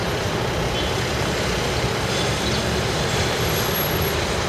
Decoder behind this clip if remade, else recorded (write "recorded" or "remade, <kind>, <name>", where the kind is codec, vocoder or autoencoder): remade, vocoder, BigVGAN v2